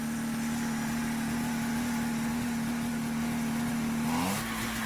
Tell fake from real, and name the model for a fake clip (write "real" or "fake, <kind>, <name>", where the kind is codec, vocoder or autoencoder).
real